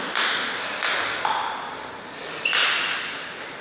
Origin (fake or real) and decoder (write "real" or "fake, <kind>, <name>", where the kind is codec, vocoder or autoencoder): real